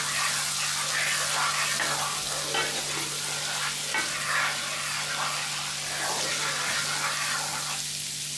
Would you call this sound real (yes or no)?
yes